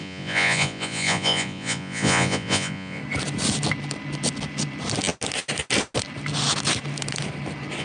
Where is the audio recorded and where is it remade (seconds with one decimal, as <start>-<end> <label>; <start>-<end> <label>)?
0.0-3.0 remade; 3.0-7.8 recorded